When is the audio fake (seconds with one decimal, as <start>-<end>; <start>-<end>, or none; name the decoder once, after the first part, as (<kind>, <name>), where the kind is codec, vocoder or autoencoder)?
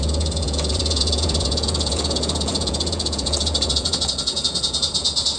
0.0-5.4 (vocoder, Vocos)